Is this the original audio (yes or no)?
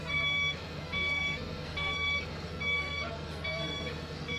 no